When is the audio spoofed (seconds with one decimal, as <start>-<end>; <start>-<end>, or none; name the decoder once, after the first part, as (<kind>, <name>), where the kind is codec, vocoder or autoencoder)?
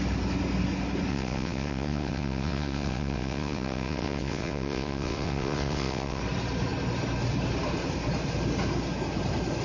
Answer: 1.1-6.2 (vocoder, WaveNeXt)